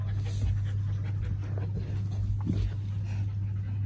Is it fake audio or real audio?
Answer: real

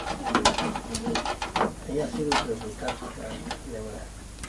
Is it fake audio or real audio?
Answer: real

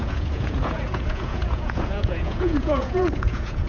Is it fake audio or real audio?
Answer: fake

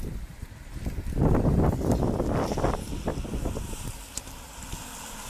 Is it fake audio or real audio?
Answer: fake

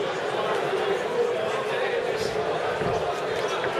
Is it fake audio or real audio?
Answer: real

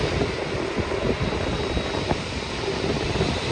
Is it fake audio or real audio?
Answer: real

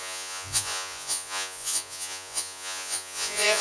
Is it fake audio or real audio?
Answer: fake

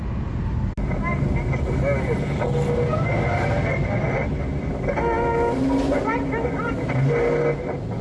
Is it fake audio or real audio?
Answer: real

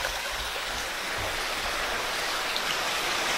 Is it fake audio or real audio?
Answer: fake